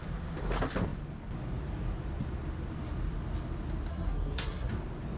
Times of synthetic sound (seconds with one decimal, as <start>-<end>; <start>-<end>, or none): 3.9-4.7